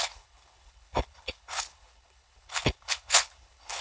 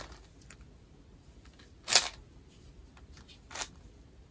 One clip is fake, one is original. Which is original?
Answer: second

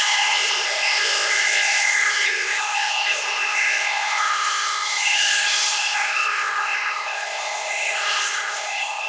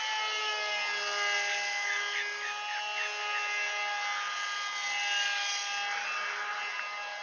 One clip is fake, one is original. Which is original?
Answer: second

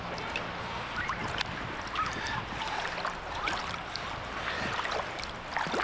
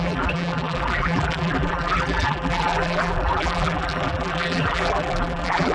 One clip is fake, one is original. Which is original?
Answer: first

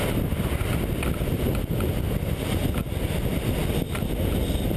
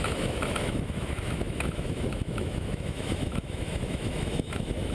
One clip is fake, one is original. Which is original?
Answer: first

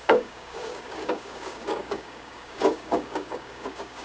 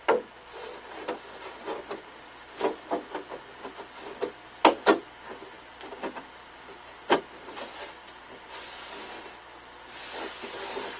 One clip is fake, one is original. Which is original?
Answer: second